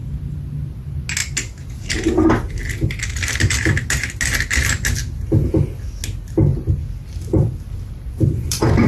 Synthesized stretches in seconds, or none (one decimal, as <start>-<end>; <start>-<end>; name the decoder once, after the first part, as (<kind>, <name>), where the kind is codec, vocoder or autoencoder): 6.5-8.9 (vocoder, BigVGAN v2)